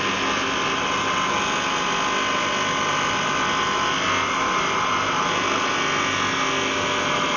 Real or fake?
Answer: real